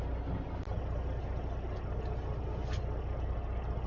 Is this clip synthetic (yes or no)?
no